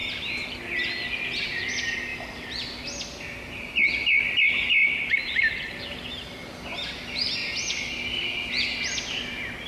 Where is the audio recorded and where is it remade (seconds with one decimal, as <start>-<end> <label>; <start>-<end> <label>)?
0.0-9.7 recorded

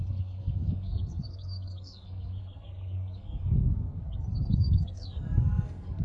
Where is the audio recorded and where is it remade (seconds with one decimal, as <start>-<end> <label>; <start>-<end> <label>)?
0.0-6.0 remade